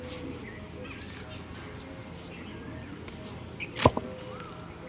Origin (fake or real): real